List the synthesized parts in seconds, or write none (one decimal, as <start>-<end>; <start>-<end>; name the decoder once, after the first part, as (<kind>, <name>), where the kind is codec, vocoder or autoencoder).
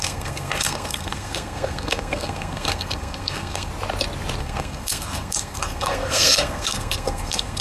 0.0-3.7 (codec, SNAC); 4.4-7.6